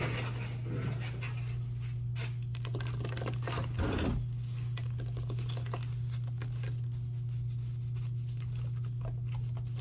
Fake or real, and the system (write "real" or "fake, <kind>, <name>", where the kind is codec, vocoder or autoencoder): real